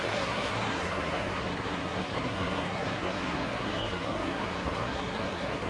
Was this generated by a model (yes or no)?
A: yes